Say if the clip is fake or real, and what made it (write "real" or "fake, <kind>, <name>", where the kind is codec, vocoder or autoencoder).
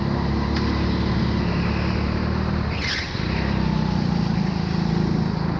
real